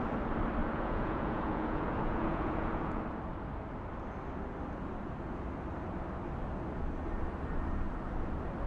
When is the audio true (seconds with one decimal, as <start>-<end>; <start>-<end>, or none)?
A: 0.0-0.6; 3.0-8.7